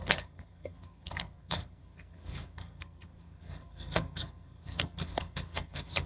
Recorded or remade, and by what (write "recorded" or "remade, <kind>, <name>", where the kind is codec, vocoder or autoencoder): remade, codec, SNAC